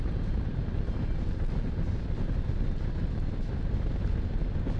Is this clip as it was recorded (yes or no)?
yes